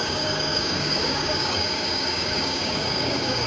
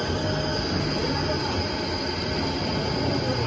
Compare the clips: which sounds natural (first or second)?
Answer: second